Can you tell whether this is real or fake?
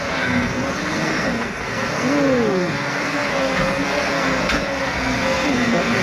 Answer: fake